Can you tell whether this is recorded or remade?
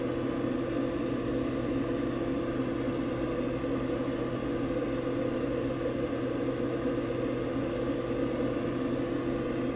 recorded